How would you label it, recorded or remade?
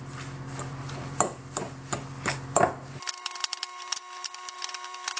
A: remade